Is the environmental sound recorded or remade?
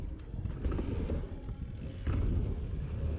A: recorded